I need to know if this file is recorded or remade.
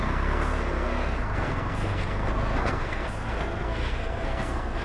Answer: remade